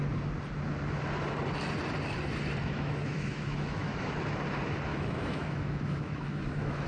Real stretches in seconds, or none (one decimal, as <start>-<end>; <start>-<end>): 0.0-2.6; 4.2-4.9